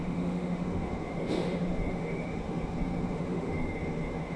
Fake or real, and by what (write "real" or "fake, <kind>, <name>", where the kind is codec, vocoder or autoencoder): fake, autoencoder, DAC-VAE